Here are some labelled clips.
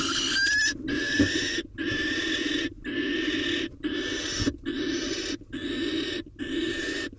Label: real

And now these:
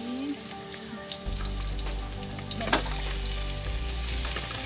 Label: real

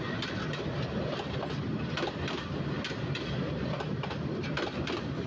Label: real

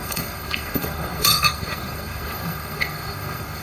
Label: fake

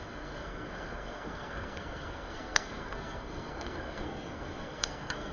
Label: fake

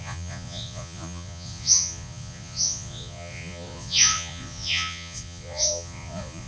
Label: fake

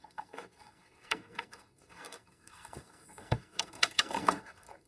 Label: fake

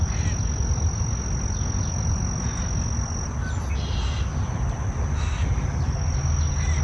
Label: real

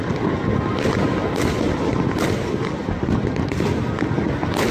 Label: real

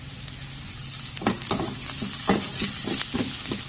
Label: real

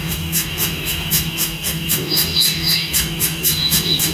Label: fake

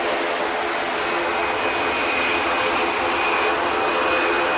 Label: real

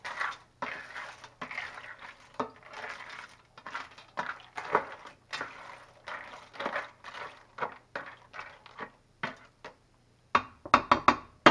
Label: real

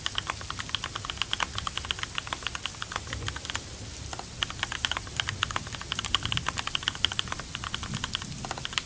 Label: real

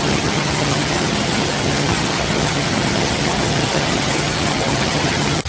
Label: fake